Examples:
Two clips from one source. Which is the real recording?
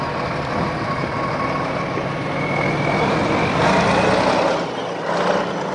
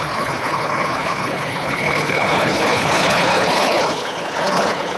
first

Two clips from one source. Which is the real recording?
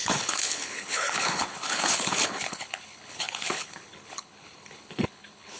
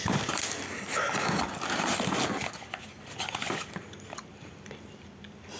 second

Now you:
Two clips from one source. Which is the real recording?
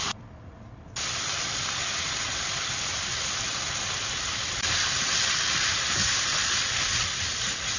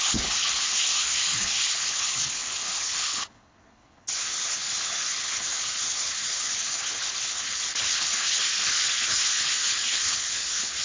first